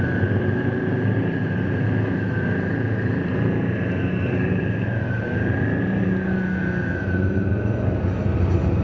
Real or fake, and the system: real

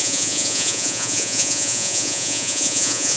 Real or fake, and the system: fake, vocoder, Vocos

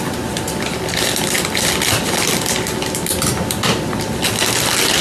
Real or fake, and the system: real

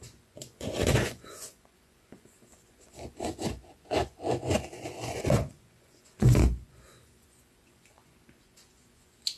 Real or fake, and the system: fake, vocoder, Vocos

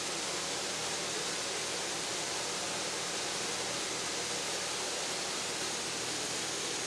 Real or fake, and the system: real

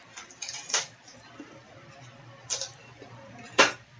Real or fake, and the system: fake, vocoder, BigVGAN v2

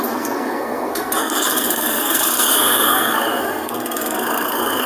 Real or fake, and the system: fake, codec, SNAC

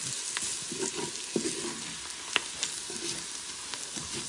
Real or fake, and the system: real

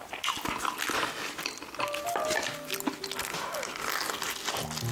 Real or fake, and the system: real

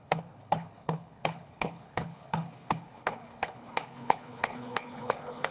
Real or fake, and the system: fake, codec, HILCodec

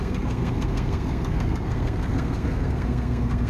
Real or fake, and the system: fake, codec, SNAC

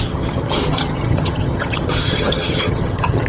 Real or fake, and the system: fake, vocoder, HiFi-GAN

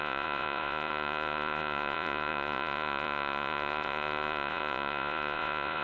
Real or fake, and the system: fake, vocoder, Vocos